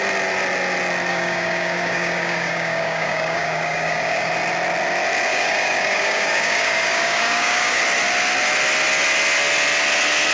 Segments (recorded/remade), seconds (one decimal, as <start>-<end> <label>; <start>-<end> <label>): 0.0-1.1 recorded; 1.1-4.3 remade; 4.3-5.3 recorded; 5.3-7.8 remade; 7.8-10.3 recorded